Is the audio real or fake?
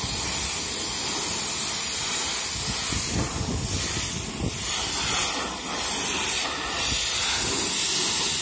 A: real